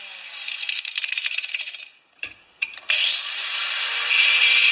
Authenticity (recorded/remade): remade